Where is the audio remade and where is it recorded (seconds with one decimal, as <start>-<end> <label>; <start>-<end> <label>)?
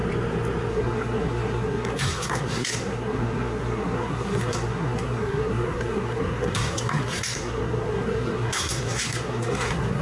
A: 0.0-0.7 recorded; 0.7-10.0 remade